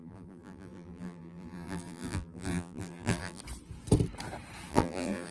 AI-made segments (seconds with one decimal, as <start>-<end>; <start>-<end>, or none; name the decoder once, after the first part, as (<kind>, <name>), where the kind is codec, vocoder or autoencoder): 0.0-3.4 (vocoder, BigVGAN v2); 4.7-5.3